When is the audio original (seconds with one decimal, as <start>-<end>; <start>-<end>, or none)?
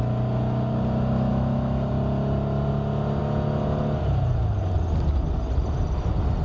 0.0-1.3; 1.9-6.4